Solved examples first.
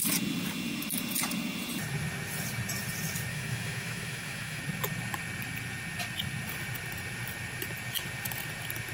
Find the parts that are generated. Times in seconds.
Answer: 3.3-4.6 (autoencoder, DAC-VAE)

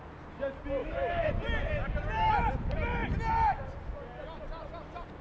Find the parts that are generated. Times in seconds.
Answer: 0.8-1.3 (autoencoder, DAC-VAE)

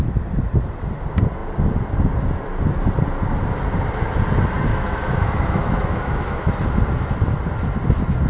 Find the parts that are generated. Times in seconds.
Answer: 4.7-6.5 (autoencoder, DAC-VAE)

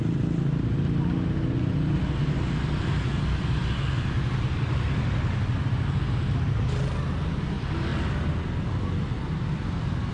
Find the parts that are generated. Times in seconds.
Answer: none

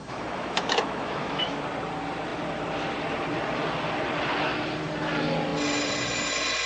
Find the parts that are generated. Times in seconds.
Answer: 0.0-1.5 (autoencoder, DAC-VAE)